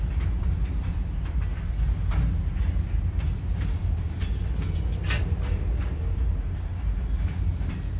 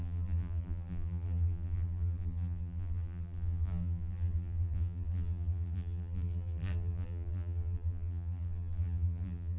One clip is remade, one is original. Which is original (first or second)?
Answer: first